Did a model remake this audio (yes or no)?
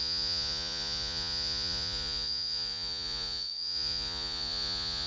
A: yes